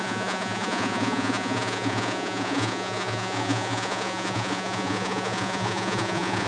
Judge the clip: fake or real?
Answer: fake